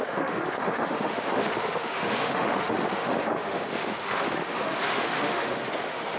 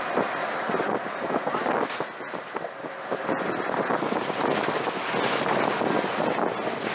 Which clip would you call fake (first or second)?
first